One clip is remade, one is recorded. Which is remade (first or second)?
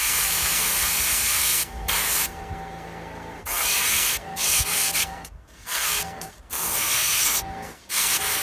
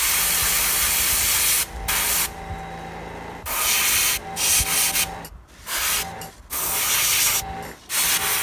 first